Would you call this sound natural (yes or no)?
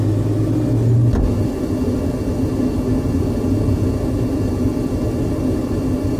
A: yes